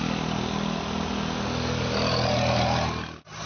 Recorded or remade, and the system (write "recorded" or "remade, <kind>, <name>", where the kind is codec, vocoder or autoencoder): recorded